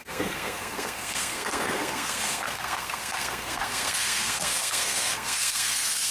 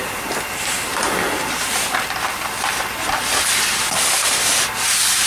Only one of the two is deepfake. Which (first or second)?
first